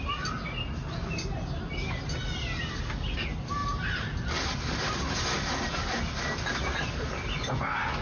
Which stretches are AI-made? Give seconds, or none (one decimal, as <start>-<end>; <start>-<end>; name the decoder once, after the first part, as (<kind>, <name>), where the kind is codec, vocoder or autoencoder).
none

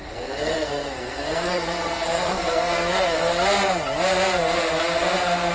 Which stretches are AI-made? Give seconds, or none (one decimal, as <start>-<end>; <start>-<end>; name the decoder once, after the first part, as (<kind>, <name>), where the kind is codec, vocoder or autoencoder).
0.0-3.3 (codec, SNAC)

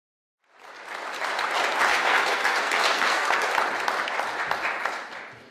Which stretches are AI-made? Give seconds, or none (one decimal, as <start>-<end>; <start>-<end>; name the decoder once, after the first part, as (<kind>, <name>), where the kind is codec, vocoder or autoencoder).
1.9-3.5 (codec, SNAC)